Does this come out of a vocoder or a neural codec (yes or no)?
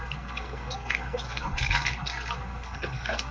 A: yes